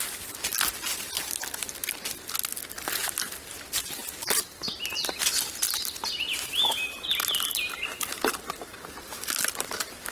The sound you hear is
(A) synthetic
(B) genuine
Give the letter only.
B